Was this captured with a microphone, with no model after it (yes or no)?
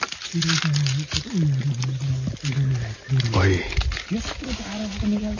yes